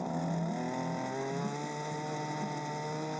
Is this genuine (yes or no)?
yes